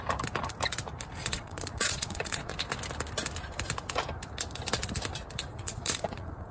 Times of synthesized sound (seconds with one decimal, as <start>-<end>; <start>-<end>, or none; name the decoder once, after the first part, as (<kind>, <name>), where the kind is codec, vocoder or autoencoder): 1.2-2.5 (vocoder, Vocos); 5.5-6.5